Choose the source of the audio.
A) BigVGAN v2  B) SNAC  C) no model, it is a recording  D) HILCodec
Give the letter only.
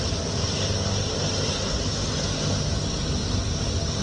C